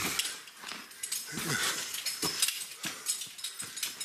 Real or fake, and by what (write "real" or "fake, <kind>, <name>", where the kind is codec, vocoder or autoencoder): real